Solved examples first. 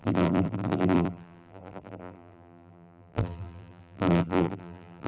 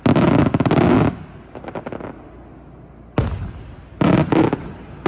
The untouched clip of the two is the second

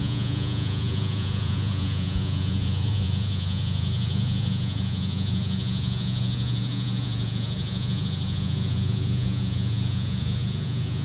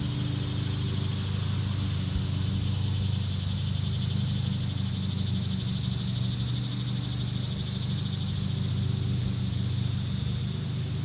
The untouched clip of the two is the second